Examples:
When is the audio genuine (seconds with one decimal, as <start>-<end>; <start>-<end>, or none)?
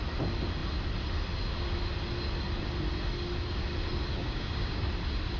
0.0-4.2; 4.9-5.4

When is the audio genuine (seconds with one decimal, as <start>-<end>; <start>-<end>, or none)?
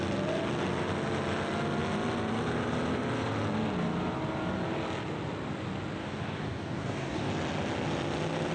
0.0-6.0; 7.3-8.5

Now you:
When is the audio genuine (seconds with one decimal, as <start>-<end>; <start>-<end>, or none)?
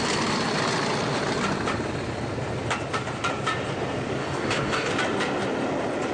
0.0-4.2; 4.9-6.1